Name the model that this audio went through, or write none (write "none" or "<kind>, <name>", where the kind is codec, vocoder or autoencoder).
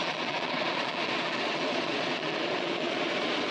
vocoder, Vocos